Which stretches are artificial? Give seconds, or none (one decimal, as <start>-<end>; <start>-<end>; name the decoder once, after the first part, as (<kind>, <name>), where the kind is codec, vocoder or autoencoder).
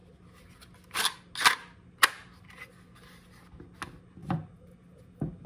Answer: none